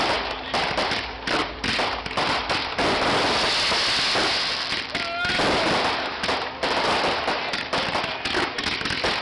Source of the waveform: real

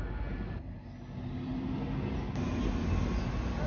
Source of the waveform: real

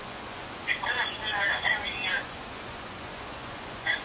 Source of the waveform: fake